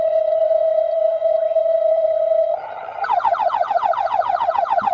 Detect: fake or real fake